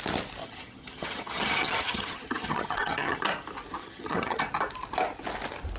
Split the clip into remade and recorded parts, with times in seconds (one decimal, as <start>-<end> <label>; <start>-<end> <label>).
0.0-0.4 recorded; 0.4-3.2 remade; 3.2-3.8 recorded; 3.8-4.4 remade; 4.4-5.8 recorded